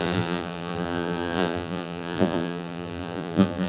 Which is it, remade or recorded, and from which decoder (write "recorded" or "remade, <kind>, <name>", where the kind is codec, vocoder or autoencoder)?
remade, vocoder, BigVGAN v2